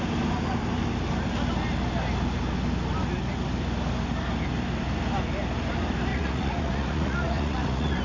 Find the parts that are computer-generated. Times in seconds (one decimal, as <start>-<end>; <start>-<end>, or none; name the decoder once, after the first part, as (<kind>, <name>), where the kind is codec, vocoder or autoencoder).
6.1-8.0 (vocoder, Vocos)